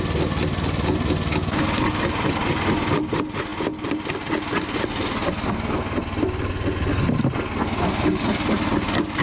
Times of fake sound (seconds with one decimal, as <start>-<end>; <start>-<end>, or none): none